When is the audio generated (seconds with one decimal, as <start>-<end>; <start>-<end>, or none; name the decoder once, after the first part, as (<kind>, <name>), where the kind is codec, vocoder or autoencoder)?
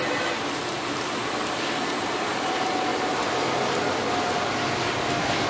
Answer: 1.2-2.3 (vocoder, BigVGAN v2); 2.9-3.5